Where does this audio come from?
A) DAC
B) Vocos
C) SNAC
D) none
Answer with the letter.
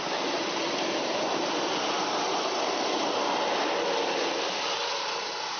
D